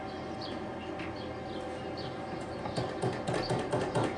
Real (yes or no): yes